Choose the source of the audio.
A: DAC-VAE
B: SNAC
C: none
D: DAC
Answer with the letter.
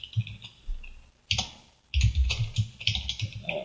C